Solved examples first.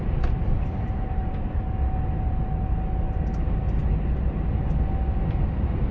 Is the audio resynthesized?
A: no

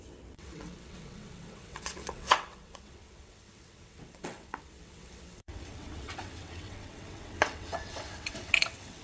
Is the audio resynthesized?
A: yes